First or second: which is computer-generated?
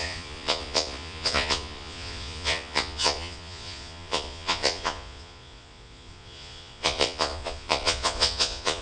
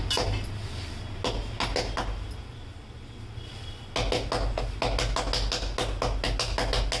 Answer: first